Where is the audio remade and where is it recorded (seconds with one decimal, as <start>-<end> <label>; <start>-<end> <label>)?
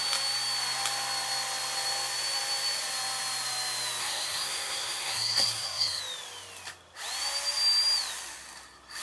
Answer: 0.0-4.0 recorded; 4.0-6.0 remade; 6.0-9.0 recorded